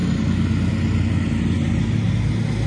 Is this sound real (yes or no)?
yes